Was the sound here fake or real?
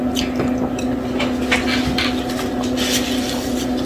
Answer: real